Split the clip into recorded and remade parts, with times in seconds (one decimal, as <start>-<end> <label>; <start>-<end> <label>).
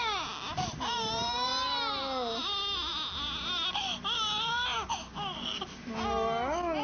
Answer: 0.0-6.8 recorded